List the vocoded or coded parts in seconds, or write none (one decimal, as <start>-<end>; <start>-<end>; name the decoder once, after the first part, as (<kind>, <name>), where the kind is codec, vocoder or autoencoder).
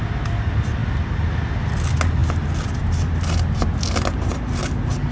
none